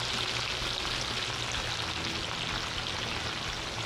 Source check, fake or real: real